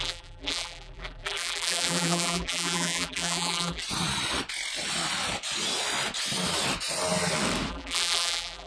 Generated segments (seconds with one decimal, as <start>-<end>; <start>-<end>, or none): 0.0-3.8; 7.7-8.7

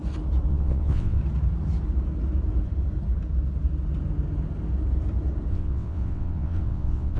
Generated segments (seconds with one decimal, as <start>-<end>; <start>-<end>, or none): 0.5-1.2; 5.5-7.2